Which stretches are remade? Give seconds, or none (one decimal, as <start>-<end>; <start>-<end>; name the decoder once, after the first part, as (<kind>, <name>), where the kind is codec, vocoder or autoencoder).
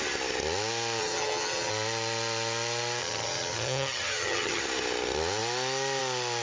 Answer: 1.0-1.7 (vocoder, HiFi-GAN); 3.0-4.6